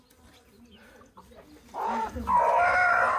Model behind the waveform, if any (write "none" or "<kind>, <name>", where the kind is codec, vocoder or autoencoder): none